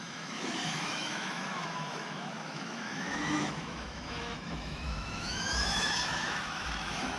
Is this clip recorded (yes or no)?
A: no